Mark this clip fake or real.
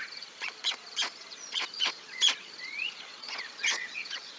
fake